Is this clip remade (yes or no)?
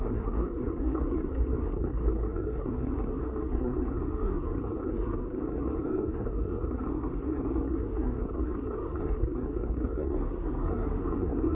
yes